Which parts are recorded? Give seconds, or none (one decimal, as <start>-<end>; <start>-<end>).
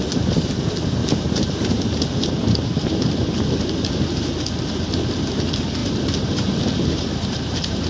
0.0-1.0; 1.7-5.8